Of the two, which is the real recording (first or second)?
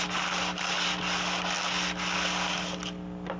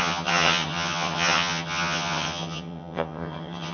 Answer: first